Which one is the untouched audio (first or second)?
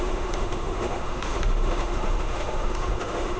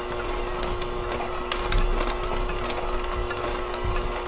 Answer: second